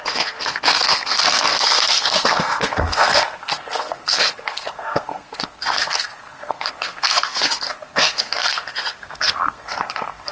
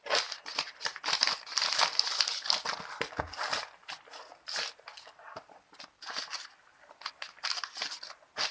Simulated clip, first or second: first